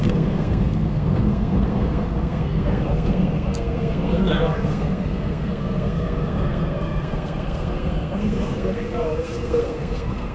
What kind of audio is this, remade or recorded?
remade